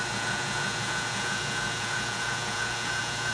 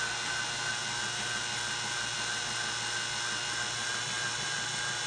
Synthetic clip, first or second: first